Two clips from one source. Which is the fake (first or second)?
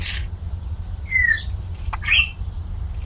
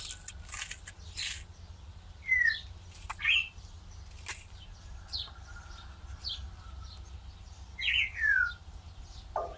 first